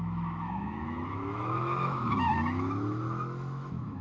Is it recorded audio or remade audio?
remade